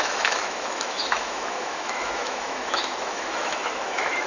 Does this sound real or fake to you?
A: fake